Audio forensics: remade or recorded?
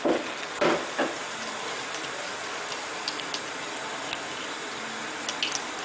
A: recorded